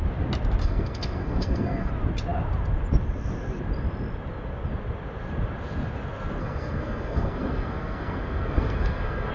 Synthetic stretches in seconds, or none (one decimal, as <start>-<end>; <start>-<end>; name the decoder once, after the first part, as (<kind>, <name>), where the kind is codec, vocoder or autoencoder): 0.6-1.9 (codec, SNAC); 6.4-9.3